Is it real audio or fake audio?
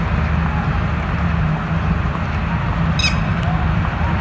real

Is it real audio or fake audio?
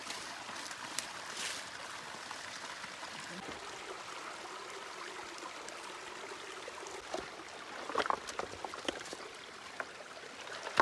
real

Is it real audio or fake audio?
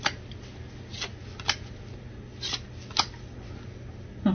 real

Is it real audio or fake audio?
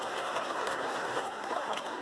fake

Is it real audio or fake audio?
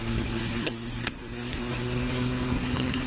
fake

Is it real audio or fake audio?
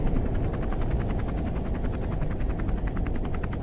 real